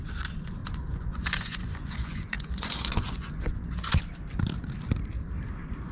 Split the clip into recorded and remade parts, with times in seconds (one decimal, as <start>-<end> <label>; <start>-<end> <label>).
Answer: 0.0-0.6 recorded; 0.6-4.0 remade; 4.0-5.9 recorded